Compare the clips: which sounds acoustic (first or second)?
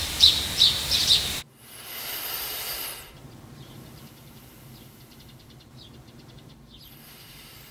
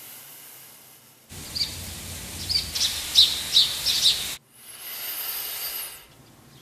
second